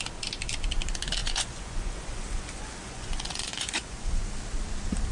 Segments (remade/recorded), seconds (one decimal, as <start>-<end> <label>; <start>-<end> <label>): 0.0-1.2 recorded; 1.2-4.3 remade; 4.3-5.1 recorded